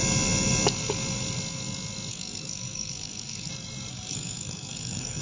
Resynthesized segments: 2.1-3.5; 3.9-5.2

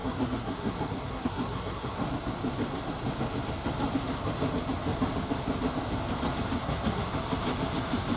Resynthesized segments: 0.0-2.0; 6.6-7.1

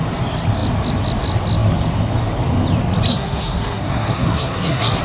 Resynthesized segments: 3.1-5.0

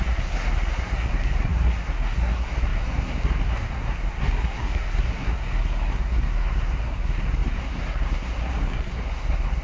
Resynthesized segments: 0.0-9.6

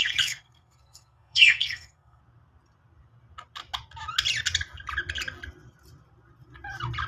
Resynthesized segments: 0.0-2.2

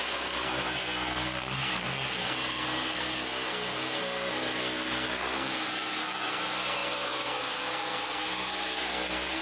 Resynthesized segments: 0.0-9.4

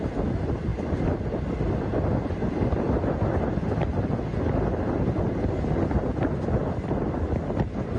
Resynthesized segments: none

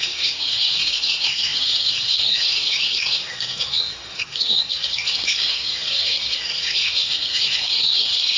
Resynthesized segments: 0.0-8.4